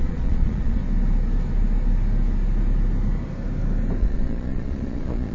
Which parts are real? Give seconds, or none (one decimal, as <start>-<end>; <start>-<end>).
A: 0.8-4.0